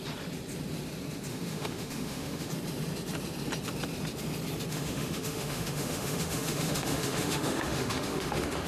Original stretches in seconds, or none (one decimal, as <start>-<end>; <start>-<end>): 0.0-1.3; 2.5-4.7